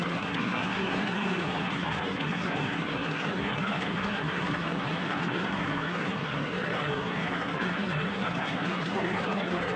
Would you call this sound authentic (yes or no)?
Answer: no